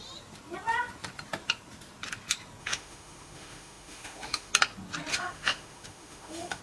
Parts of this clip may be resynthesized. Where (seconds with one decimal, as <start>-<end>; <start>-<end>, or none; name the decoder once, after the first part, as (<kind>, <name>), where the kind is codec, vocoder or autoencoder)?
2.6-4.5 (autoencoder, DAC-VAE); 5.1-6.6